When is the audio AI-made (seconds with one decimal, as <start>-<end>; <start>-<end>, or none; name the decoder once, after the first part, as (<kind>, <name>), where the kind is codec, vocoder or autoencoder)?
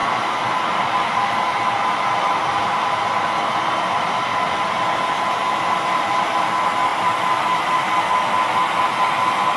6.9-8.0 (vocoder, BigVGAN v2)